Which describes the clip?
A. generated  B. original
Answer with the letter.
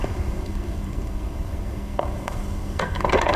A